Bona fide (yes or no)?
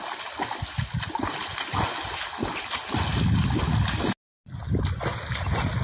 yes